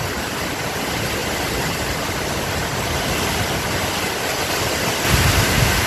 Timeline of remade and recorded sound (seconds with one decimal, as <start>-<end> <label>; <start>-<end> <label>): 0.0-5.9 recorded